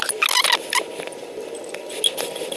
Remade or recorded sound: recorded